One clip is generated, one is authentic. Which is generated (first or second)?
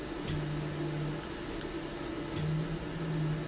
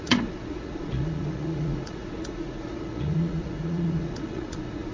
second